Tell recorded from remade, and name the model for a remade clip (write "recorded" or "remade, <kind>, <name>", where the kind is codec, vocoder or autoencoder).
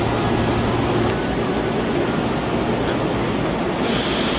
recorded